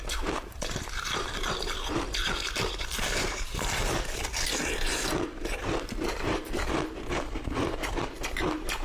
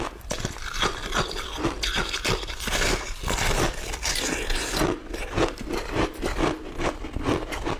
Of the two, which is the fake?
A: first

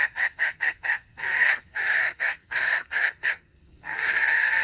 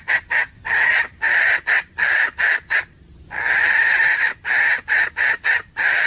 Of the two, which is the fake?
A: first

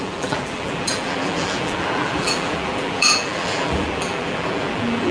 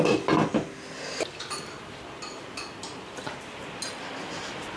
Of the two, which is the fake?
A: first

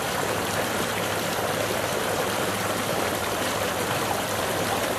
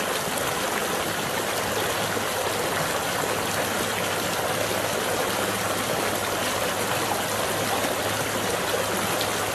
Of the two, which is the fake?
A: first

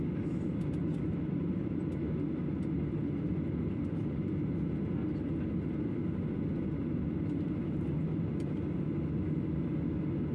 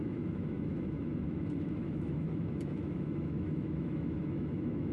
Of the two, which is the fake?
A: second